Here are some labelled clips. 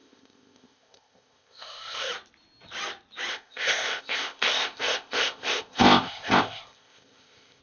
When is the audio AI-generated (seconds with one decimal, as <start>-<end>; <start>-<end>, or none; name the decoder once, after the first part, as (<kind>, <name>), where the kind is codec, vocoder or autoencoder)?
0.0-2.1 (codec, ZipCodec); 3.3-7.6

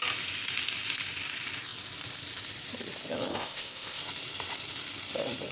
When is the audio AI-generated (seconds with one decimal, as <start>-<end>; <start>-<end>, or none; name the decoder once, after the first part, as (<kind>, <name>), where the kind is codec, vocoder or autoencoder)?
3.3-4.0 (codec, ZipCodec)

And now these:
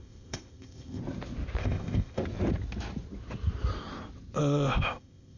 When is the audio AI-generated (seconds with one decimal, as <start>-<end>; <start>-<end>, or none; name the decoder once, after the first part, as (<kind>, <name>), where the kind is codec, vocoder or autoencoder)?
0.0-1.0 (codec, ZipCodec); 1.6-2.2; 4.4-5.4